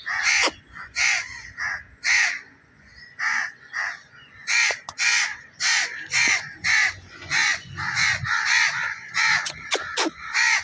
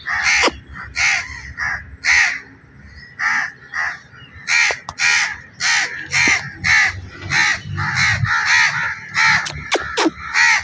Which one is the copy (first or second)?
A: first